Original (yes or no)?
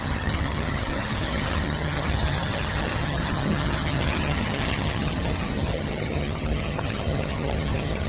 no